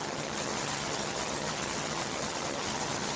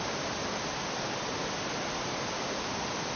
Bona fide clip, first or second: second